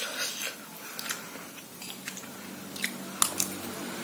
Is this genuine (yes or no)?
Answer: yes